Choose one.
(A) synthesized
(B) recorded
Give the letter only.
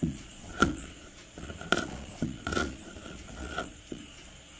A